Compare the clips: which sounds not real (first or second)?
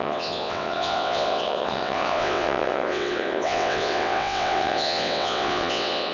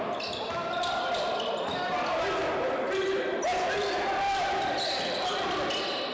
first